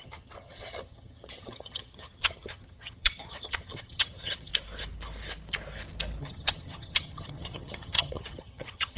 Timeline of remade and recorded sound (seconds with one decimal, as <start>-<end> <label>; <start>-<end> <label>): 0.0-4.5 remade; 4.5-6.2 recorded; 6.2-9.0 remade